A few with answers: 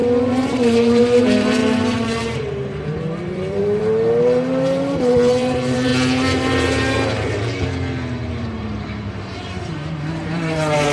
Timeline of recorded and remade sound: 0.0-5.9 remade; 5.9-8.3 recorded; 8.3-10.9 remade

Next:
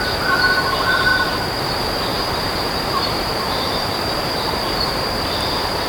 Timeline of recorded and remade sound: 0.0-1.1 recorded; 1.1-1.6 remade; 1.6-2.1 recorded; 2.1-5.9 remade

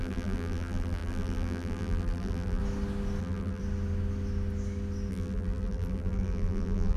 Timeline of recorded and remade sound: 0.0-2.6 remade; 2.6-3.2 recorded; 3.2-3.6 remade; 3.6-5.1 recorded; 5.1-7.0 remade